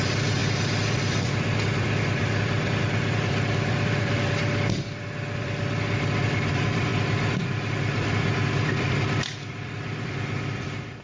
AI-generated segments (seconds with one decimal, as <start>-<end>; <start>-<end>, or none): 0.0-6.9; 7.4-11.0